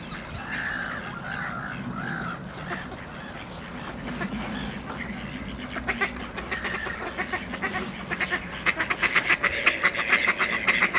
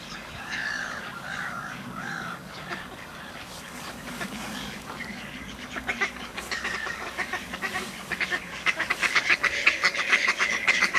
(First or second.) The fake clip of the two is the second